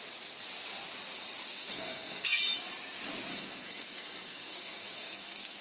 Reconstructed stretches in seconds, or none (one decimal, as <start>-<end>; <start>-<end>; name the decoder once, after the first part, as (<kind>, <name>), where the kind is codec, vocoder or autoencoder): 1.6-2.4 (codec, SNAC); 3.3-5.6